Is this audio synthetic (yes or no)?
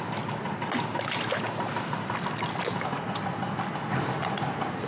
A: no